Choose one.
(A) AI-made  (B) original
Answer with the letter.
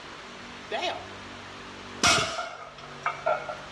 B